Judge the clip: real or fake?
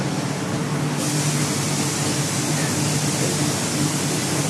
real